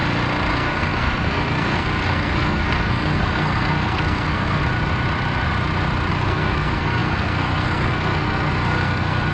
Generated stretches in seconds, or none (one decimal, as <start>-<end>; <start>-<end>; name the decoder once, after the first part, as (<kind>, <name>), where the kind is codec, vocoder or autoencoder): 0.5-4.6 (codec, SNAC); 6.1-9.3